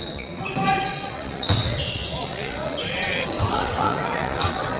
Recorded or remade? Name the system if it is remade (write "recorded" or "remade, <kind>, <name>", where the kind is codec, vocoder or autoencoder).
remade, vocoder, WaveNeXt